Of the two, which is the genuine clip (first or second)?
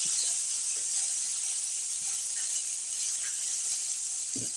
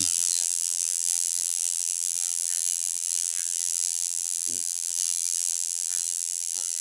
first